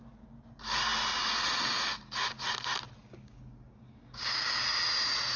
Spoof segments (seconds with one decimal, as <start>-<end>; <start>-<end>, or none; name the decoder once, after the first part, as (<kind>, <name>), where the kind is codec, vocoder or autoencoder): 3.0-4.6 (codec, DAC)